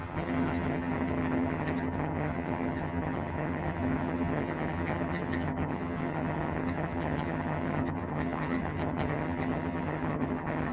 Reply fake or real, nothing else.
fake